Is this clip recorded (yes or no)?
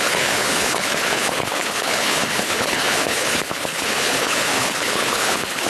no